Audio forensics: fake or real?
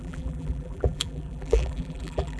fake